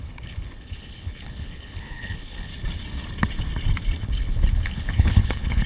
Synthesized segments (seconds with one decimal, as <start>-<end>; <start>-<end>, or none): 0.0-2.5; 4.0-5.7